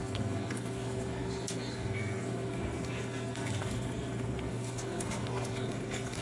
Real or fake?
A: fake